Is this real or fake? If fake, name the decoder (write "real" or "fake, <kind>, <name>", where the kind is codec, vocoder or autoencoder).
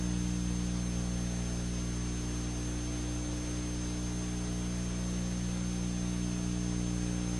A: real